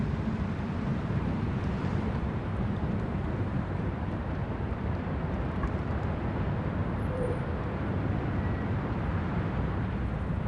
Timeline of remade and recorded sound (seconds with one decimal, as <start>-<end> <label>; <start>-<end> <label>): 0.0-0.9 recorded; 0.9-4.9 remade; 4.9-6.8 recorded; 6.8-7.5 remade; 7.5-10.5 recorded